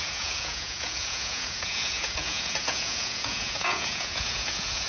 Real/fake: fake